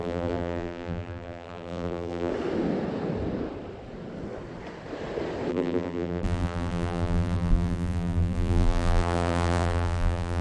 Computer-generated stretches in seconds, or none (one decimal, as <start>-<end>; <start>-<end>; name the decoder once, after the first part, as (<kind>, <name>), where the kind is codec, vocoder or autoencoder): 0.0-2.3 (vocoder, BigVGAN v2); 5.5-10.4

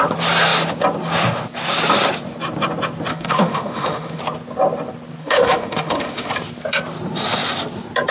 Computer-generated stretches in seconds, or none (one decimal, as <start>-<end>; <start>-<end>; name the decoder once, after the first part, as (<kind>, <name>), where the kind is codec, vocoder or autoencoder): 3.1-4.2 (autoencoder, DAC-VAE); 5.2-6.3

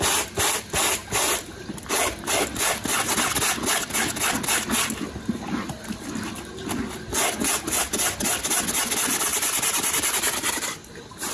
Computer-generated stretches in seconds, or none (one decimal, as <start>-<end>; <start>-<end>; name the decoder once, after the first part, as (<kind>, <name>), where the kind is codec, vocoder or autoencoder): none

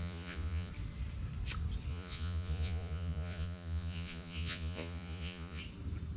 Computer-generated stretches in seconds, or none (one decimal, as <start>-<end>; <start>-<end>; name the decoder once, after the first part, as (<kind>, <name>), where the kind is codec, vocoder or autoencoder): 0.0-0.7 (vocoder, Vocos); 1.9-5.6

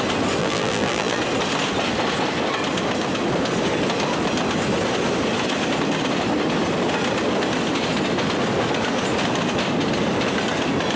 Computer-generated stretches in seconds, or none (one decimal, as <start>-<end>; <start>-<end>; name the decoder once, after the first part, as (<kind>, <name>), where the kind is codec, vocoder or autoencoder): 0.4-1.2 (vocoder, BigVGAN v2)